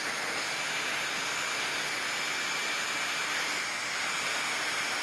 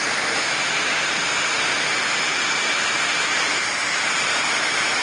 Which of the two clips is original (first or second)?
first